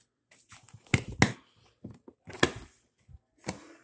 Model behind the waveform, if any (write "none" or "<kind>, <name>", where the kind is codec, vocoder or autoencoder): none